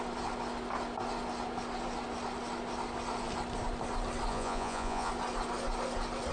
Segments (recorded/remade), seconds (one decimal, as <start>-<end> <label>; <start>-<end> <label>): 0.0-4.3 recorded; 4.3-5.1 remade; 5.1-6.3 recorded